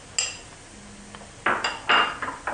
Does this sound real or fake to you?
real